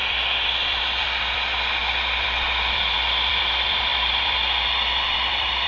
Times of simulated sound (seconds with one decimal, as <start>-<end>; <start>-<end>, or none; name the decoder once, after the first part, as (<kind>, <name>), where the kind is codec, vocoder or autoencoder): 0.0-1.8 (vocoder, BigVGAN v2); 2.7-5.7